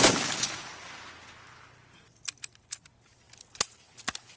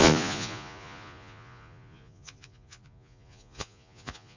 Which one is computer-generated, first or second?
second